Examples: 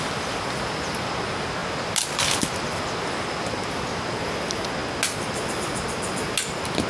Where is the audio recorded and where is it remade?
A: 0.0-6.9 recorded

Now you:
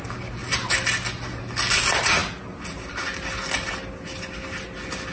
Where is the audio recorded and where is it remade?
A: 0.0-5.1 recorded

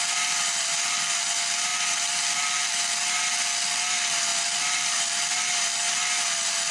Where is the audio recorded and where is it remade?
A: 0.0-6.7 recorded

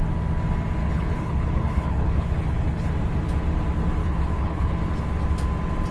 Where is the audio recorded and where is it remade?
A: 0.0-0.8 recorded; 0.8-2.9 remade; 2.9-4.0 recorded; 4.0-4.8 remade; 4.8-5.9 recorded

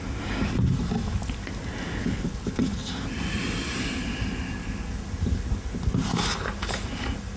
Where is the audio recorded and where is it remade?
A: 0.0-2.0 recorded; 2.0-2.9 remade; 2.9-7.4 recorded

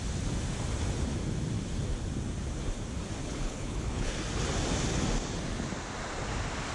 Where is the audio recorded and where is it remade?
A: 0.0-3.2 recorded; 3.2-4.1 remade; 4.1-6.7 recorded